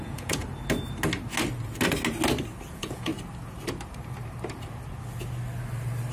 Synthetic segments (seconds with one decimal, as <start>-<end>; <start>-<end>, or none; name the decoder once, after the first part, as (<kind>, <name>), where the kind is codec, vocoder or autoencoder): 0.0-0.4 (vocoder, Vocos); 2.7-3.1